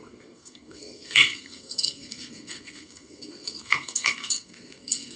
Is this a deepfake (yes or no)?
yes